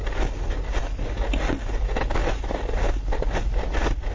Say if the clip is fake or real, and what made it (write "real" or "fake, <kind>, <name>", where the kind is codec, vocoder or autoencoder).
real